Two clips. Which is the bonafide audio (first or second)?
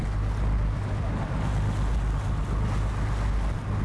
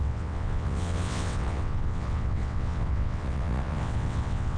first